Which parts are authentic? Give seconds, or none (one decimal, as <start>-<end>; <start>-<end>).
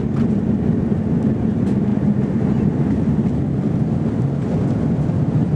0.0-5.6